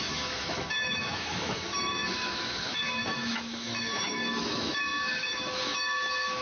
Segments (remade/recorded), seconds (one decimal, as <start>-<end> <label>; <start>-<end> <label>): 0.0-6.4 remade